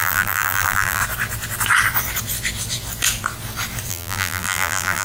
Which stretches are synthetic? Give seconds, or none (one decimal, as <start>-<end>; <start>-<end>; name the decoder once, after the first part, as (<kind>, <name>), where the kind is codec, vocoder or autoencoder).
0.0-1.0 (vocoder, BigVGAN v2); 3.9-5.0